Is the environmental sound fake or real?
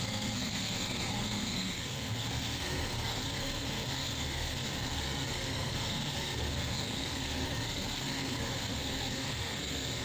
fake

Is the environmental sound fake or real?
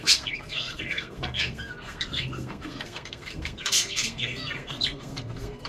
fake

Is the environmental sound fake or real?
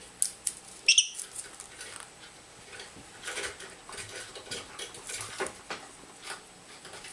real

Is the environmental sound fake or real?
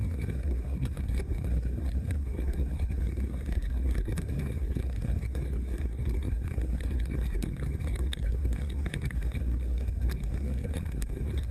fake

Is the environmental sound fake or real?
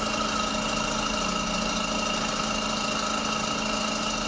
real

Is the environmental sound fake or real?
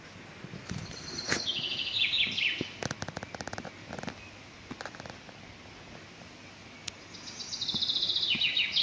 real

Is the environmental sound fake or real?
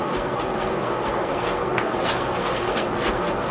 fake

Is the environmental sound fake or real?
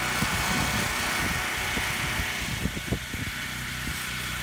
real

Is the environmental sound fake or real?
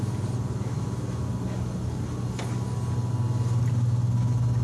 real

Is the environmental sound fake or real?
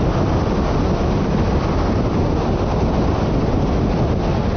real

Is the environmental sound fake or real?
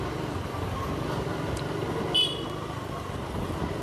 real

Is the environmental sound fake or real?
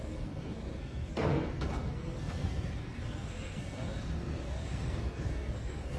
fake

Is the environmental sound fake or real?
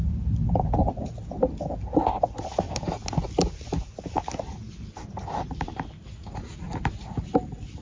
real